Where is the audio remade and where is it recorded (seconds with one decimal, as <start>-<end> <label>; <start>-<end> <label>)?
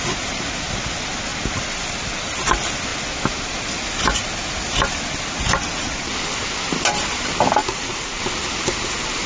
0.0-7.6 recorded; 7.6-8.2 remade; 8.2-9.3 recorded